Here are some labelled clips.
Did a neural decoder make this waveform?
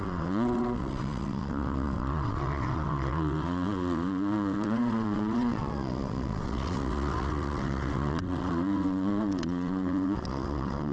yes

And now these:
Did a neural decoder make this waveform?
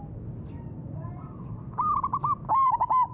no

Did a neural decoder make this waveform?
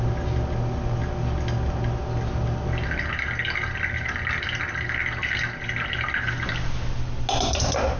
no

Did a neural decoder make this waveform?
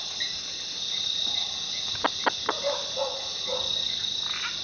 no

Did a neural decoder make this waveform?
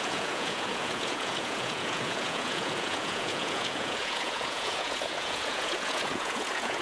yes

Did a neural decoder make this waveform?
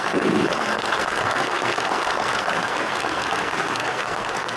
yes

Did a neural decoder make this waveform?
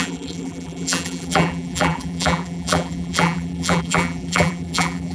yes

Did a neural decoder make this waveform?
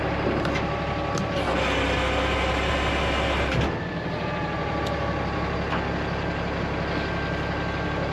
no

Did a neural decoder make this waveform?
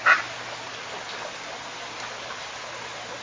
no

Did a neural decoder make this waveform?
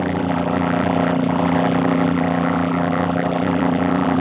yes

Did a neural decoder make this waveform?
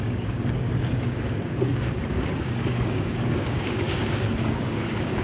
yes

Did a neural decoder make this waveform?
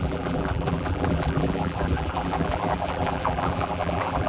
yes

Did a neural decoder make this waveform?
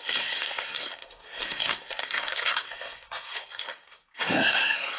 yes